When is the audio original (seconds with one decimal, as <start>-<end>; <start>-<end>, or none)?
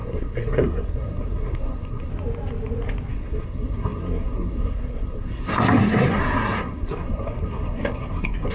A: 2.1-3.1